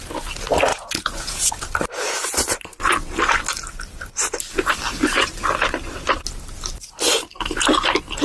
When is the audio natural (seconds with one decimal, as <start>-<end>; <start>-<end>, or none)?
0.0-0.7; 1.5-8.2